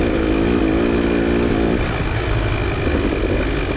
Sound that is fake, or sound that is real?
real